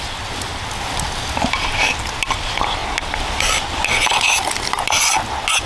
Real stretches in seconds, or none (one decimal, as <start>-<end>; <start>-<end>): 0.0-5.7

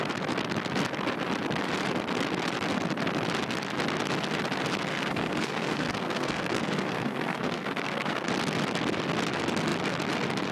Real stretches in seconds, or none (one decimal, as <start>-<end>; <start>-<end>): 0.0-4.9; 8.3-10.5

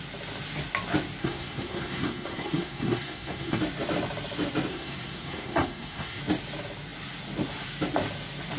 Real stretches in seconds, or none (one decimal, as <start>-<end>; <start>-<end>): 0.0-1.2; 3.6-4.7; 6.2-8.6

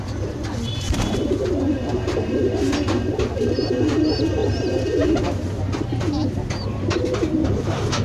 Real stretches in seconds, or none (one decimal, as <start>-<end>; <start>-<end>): 0.0-8.0

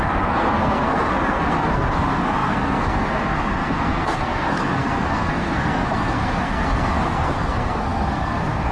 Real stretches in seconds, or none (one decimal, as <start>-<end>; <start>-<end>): none